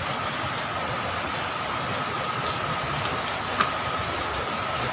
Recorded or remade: recorded